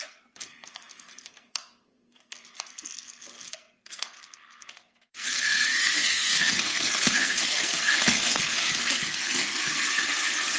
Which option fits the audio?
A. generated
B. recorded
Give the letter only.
A